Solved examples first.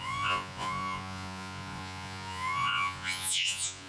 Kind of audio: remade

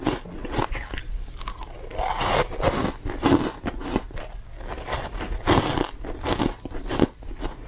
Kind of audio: recorded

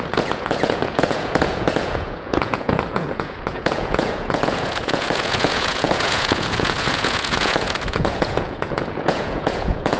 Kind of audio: remade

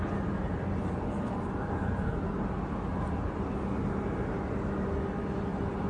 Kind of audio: recorded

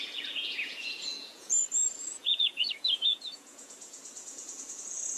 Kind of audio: remade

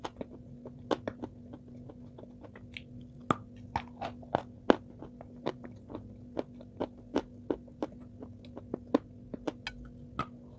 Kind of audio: recorded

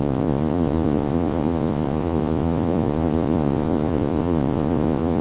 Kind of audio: remade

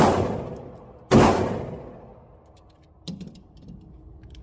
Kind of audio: recorded